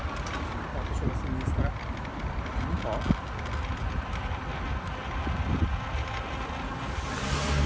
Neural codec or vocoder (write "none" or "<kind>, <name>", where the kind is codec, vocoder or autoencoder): none